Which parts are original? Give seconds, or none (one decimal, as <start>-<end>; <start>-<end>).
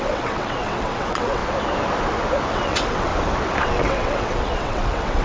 1.4-2.5; 3.1-3.6